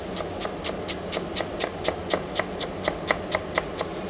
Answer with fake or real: real